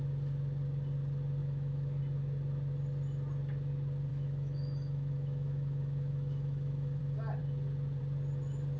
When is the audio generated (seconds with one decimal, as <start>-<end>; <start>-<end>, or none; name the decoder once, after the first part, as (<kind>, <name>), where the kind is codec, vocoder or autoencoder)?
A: 1.4-2.0 (autoencoder, DAC-VAE); 4.1-7.0